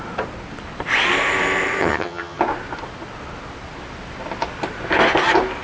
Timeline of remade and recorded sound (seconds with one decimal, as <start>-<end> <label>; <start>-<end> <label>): 0.0-1.8 recorded; 1.8-2.4 remade; 2.4-5.6 recorded